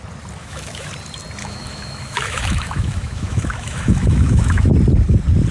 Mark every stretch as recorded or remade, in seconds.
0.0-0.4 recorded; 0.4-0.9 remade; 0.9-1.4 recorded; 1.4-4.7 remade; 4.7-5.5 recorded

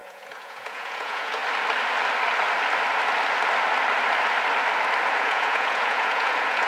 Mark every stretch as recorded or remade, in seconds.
0.0-1.4 remade; 1.4-5.2 recorded; 5.2-6.7 remade

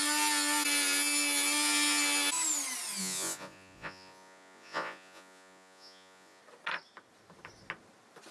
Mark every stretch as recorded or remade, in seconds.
0.0-3.0 recorded; 3.0-6.4 remade; 6.4-8.3 recorded

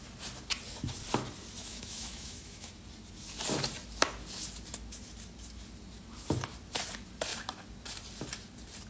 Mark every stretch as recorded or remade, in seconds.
0.0-1.6 recorded; 1.6-2.8 remade; 2.8-8.9 recorded

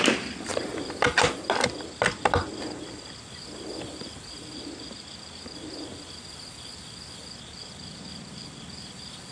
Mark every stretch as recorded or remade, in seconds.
0.0-9.3 recorded